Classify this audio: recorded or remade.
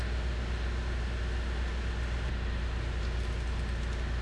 recorded